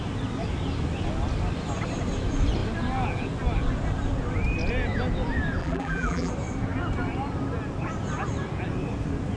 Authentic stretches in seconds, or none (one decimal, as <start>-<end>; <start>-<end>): 0.0-5.6; 6.3-9.4